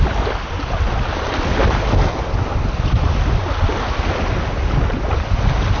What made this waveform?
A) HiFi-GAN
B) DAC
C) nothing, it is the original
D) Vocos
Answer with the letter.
C